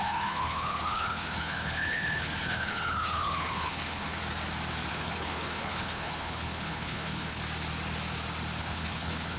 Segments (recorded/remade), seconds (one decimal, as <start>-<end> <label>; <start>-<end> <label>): 0.0-4.2 remade; 4.2-4.9 recorded; 4.9-7.4 remade; 7.4-8.6 recorded; 8.6-9.4 remade